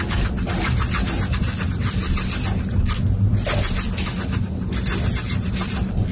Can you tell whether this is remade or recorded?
recorded